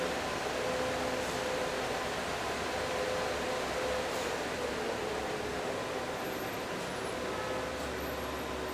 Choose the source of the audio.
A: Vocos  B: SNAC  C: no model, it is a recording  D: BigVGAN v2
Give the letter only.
C